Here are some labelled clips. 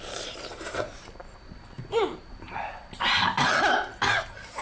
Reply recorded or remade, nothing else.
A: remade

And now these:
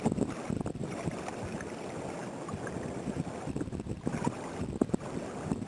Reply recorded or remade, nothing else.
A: recorded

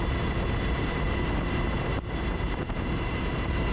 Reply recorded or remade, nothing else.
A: remade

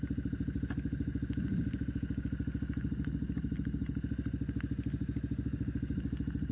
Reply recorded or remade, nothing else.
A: recorded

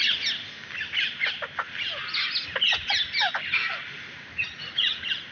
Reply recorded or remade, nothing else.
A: recorded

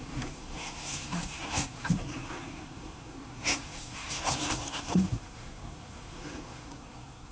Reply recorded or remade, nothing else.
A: remade